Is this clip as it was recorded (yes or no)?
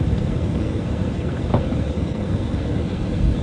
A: no